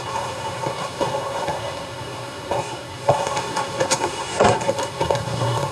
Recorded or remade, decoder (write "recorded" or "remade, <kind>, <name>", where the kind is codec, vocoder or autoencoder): remade, codec, SNAC